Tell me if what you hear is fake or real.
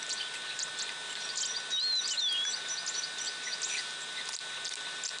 real